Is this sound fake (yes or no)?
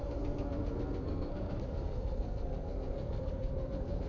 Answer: yes